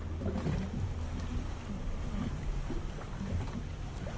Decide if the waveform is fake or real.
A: real